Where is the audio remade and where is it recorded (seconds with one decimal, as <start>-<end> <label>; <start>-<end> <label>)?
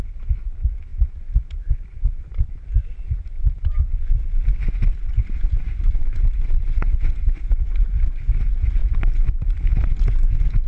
0.0-0.9 recorded; 0.9-4.5 remade; 4.5-6.0 recorded; 6.0-7.5 remade; 7.5-8.8 recorded; 8.8-9.4 remade; 9.4-10.7 recorded